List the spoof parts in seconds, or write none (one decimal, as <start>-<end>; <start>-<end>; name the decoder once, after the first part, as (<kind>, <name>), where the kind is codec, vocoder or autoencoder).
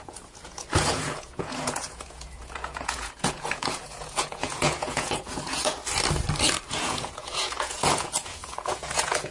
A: 0.0-5.8 (vocoder, Vocos); 6.7-9.3